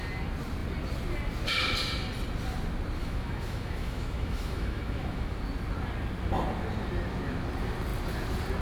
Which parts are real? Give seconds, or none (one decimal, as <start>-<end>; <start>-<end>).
0.0-3.0; 5.3-8.6